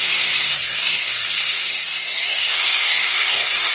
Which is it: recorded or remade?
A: remade